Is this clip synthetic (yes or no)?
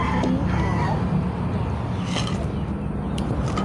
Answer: no